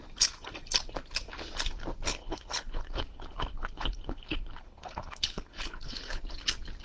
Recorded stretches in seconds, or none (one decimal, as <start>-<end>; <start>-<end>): 0.0-2.1; 6.2-6.8